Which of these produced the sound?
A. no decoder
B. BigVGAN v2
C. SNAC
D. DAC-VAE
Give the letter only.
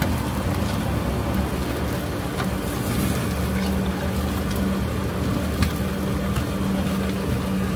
A